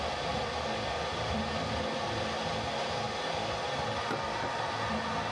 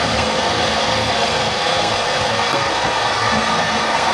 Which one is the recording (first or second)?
first